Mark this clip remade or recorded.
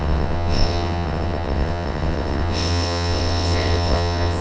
remade